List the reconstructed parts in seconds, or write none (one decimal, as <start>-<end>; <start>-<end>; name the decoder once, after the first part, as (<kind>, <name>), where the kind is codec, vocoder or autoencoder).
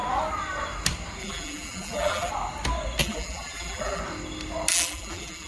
1.2-2.3 (vocoder, BigVGAN v2); 3.0-4.0; 4.7-5.5